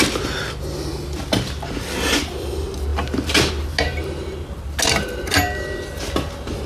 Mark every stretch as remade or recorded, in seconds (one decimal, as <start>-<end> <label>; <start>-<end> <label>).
0.0-6.7 recorded